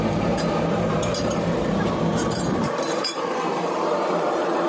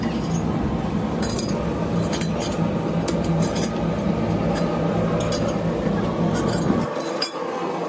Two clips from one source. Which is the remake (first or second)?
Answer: first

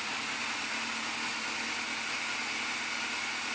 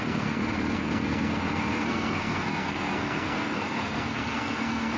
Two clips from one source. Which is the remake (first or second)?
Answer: second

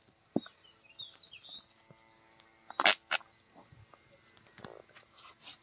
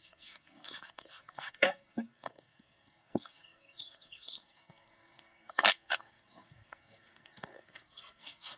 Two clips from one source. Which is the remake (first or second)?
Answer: second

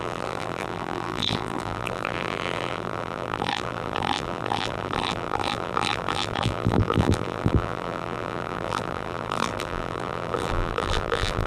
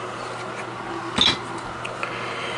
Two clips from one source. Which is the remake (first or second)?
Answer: first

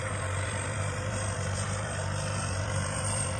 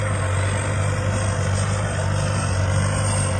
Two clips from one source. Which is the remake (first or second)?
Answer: first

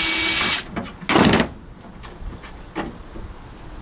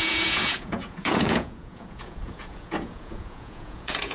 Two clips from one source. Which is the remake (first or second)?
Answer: second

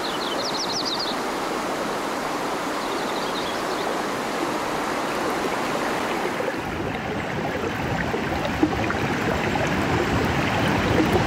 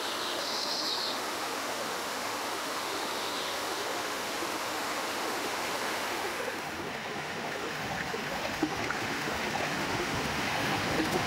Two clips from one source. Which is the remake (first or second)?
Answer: second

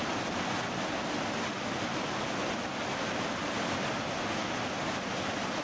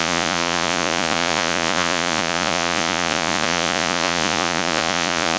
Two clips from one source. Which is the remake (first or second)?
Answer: second